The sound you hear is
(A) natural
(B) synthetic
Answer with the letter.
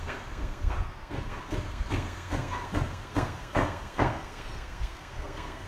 B